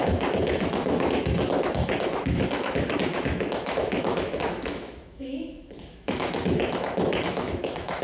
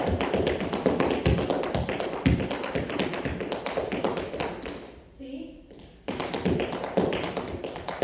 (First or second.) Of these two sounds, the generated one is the first